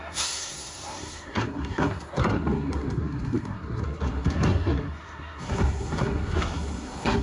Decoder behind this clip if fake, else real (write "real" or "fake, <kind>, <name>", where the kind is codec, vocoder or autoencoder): fake, codec, SNAC